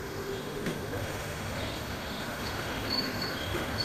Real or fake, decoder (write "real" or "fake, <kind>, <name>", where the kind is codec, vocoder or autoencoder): fake, autoencoder, DAC-VAE